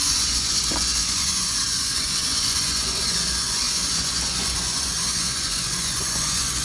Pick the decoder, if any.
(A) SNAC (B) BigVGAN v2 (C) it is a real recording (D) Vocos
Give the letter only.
D